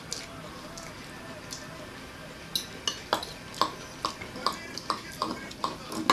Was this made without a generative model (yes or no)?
yes